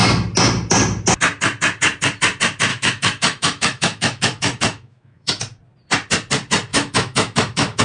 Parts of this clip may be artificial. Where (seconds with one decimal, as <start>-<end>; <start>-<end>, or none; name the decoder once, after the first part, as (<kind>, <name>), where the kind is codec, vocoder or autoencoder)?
2.7-5.4 (autoencoder, DAC-VAE); 6.7-7.8